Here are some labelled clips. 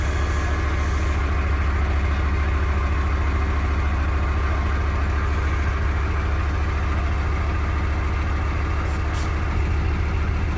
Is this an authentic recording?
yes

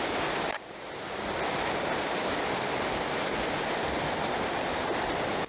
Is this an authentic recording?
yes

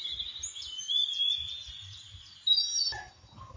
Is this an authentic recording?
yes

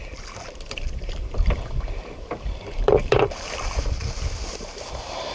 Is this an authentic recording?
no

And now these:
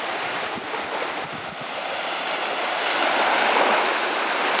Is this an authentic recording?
yes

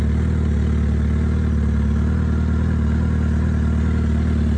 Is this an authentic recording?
yes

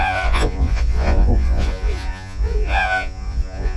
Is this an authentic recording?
no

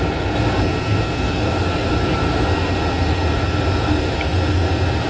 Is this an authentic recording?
yes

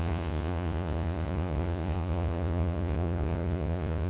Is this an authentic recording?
no